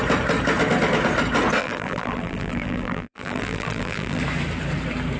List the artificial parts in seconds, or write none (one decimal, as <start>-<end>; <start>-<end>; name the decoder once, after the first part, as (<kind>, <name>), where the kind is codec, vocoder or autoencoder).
1.6-4.2 (vocoder, BigVGAN v2)